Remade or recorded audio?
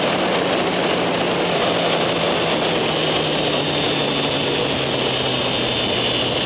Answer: recorded